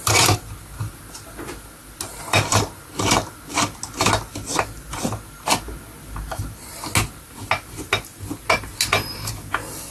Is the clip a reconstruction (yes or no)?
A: no